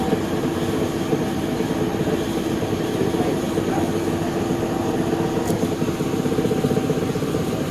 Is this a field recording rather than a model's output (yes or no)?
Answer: yes